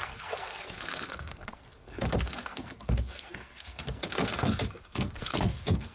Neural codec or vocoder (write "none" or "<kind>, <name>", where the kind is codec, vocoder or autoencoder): codec, SNAC